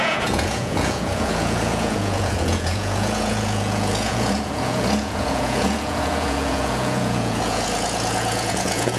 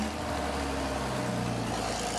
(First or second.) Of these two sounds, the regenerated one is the first